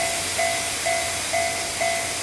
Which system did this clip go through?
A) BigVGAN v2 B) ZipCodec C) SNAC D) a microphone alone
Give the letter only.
D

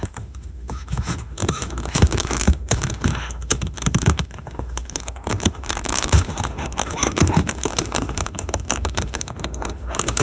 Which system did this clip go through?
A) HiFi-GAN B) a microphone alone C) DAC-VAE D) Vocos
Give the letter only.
C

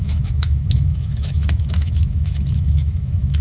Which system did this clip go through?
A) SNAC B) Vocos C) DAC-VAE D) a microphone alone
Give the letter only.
C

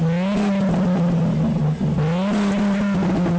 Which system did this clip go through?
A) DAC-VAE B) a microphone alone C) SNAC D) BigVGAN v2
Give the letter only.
B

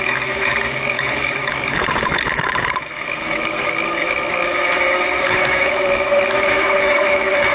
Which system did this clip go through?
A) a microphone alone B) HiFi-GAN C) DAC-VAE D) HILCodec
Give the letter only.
C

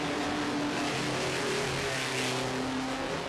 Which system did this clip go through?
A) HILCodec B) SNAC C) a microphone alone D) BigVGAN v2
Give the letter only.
C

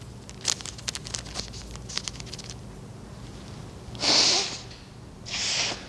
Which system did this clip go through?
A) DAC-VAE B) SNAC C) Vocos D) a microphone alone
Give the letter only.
D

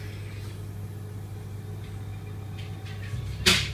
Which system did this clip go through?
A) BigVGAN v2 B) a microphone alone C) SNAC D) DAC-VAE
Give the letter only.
B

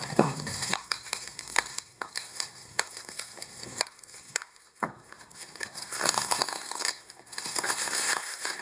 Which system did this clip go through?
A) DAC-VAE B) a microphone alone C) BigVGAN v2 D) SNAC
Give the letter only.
D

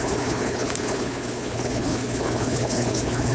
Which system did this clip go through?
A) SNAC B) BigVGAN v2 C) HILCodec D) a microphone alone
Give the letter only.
C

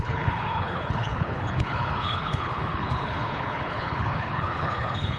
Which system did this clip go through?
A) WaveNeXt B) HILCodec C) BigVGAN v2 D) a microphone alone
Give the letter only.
B